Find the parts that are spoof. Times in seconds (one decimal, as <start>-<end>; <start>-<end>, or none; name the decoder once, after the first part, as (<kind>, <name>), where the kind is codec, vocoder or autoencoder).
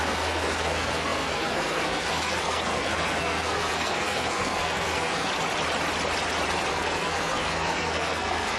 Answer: 0.0-5.3 (codec, SNAC); 6.7-8.6